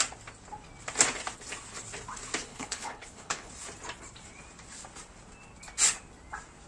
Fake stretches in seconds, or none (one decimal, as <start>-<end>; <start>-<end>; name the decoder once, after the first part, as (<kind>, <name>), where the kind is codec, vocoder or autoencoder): 2.5-3.5 (codec, HILCodec)